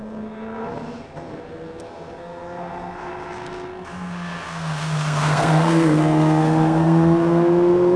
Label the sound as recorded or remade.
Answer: remade